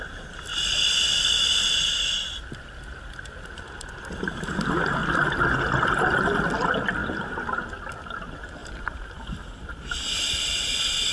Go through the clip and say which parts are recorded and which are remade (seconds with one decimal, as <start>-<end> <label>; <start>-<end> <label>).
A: 0.0-7.0 recorded; 7.0-7.6 remade; 7.6-8.6 recorded; 8.6-9.8 remade; 9.8-11.1 recorded